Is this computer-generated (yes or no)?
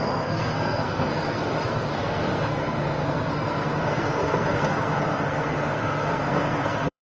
yes